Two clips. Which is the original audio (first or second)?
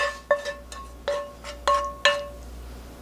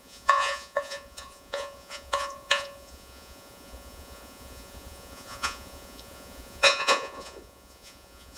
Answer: first